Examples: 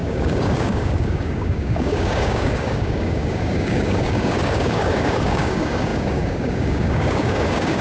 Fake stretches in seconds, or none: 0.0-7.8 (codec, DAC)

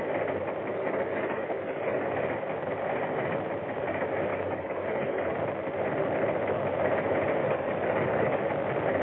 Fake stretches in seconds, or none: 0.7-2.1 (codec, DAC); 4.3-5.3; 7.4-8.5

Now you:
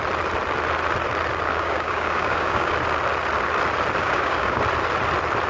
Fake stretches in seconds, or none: 1.5-2.7 (codec, DAC); 4.0-4.6

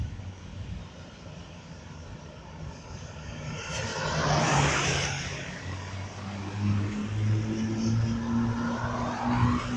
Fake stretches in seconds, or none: 0.0-0.8 (codec, DAC); 1.4-3.9; 4.4-7.0